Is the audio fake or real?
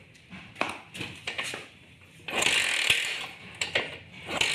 real